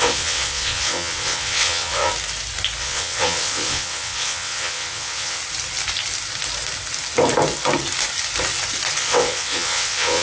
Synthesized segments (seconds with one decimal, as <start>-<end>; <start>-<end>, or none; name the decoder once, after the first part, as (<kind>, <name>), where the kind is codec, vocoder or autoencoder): 0.0-2.1 (vocoder, WaveNeXt); 2.8-5.4; 9.0-10.2